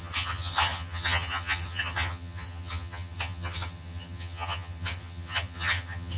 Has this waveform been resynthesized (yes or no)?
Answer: yes